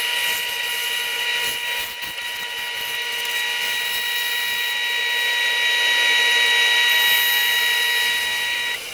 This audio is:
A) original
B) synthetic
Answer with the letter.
A